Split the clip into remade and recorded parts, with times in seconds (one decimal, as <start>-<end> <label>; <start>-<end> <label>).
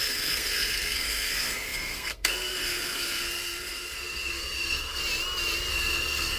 0.0-5.0 remade; 5.0-5.7 recorded; 5.7-6.4 remade